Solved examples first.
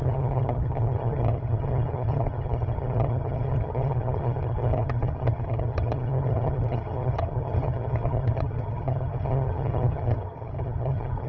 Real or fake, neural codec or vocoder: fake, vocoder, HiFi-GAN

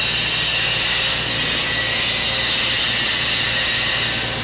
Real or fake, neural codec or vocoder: real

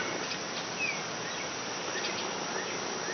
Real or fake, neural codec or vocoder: real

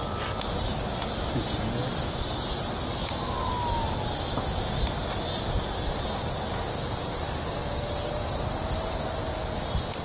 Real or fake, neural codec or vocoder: real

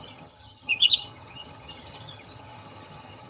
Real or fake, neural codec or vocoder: fake, vocoder, HiFi-GAN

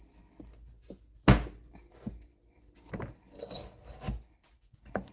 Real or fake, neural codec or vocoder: real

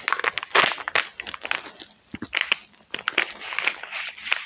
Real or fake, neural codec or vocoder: real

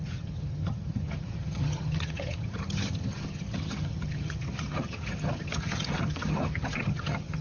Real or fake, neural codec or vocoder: fake, vocoder, HiFi-GAN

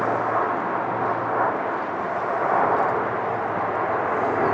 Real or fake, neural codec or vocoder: real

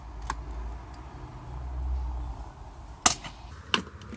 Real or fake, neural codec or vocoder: real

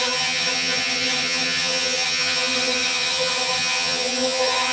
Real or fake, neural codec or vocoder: fake, vocoder, HiFi-GAN